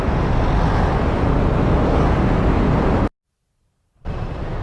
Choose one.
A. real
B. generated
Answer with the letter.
A